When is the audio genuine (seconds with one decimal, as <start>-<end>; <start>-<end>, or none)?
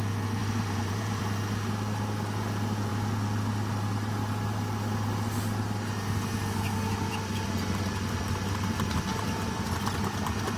0.0-0.4; 1.2-9.1; 9.7-10.6